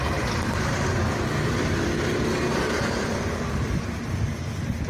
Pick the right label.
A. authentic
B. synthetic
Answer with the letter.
A